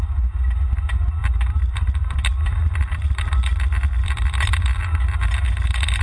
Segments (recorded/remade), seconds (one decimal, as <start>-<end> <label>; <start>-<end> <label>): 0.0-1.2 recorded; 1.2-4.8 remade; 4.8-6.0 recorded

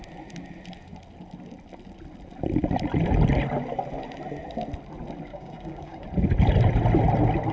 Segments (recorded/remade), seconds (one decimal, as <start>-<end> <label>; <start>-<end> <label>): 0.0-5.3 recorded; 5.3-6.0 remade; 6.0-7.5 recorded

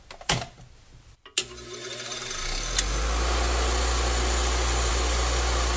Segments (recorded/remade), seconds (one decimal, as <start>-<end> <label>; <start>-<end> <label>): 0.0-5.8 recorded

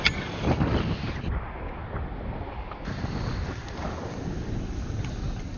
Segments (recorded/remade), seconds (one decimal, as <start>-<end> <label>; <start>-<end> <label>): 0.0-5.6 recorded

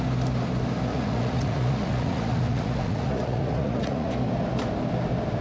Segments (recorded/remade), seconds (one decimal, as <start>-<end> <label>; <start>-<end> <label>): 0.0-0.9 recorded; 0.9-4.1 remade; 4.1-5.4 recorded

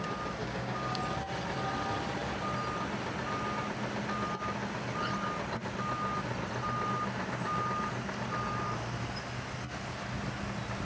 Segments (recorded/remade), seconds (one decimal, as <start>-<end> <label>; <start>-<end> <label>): 0.0-0.4 recorded; 0.4-1.0 remade; 1.0-10.8 recorded

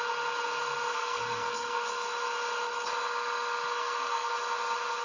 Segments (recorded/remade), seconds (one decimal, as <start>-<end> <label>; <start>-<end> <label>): 0.0-0.9 recorded; 0.9-1.8 remade; 1.8-3.7 recorded; 3.7-4.3 remade; 4.3-5.0 recorded

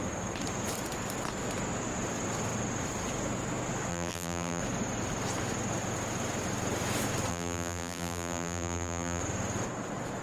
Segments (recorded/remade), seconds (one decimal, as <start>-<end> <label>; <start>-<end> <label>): 0.0-3.9 recorded; 3.9-4.6 remade; 4.6-7.3 recorded; 7.3-9.2 remade; 9.2-10.2 recorded